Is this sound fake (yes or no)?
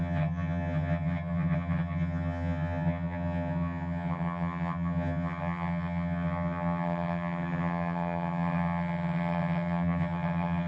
yes